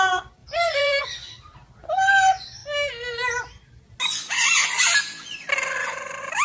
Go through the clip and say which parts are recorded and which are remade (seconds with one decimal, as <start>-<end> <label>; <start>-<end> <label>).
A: 0.0-0.4 recorded; 0.4-1.0 remade; 1.0-6.4 recorded